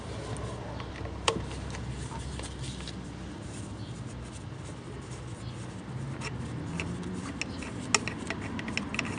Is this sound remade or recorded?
recorded